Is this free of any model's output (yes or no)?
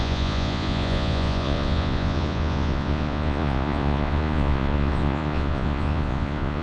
no